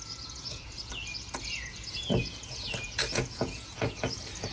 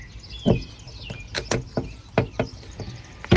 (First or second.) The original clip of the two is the second